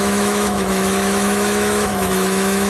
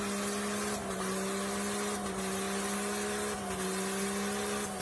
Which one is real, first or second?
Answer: second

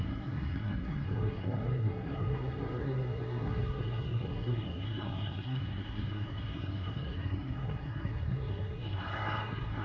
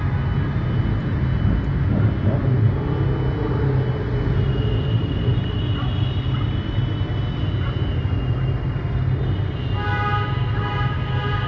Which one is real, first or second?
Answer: second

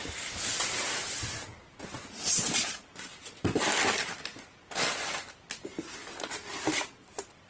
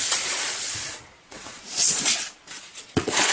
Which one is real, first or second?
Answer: first